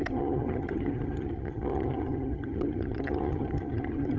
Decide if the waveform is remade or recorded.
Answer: remade